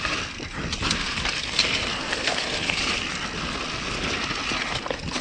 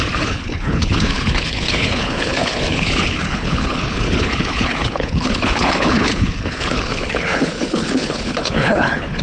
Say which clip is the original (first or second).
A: first